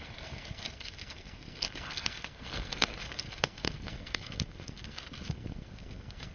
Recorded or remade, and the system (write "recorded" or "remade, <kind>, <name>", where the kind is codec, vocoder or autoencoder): remade, codec, SNAC